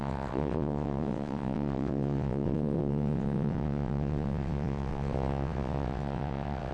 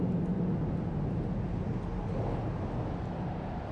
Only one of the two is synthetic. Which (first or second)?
first